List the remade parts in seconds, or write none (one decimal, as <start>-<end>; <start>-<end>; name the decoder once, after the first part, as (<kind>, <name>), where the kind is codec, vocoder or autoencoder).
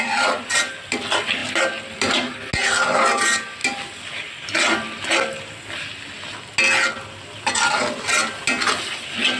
none